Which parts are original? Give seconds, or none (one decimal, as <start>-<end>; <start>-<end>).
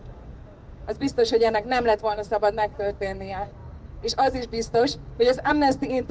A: none